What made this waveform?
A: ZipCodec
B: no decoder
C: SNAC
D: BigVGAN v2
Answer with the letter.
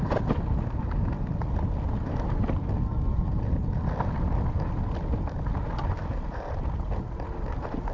B